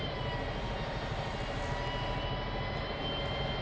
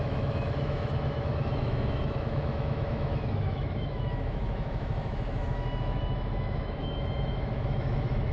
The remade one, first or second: second